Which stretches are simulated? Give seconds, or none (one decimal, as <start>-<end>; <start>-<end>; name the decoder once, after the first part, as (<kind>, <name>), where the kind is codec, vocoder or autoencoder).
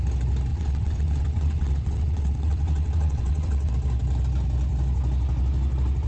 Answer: 0.5-3.7 (vocoder, WaveNeXt)